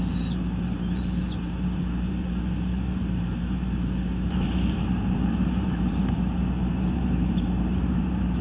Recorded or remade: remade